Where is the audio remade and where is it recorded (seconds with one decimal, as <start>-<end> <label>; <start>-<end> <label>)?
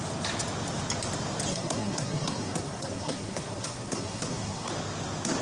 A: 0.0-1.5 recorded; 1.5-4.7 remade; 4.7-5.4 recorded